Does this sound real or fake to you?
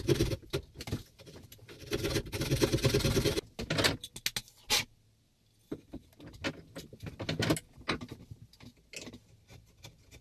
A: real